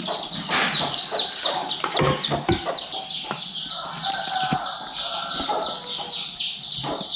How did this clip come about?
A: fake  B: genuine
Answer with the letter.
B